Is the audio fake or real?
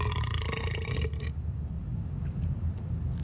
real